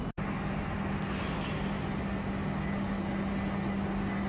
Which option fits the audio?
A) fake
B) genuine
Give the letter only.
B